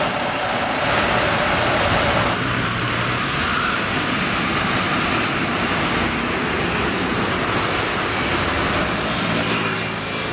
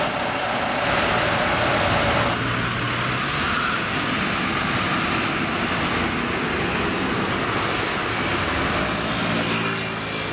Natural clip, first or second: second